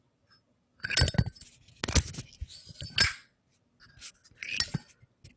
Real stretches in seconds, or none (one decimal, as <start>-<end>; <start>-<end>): 0.0-5.4